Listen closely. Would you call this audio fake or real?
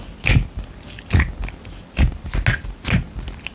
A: real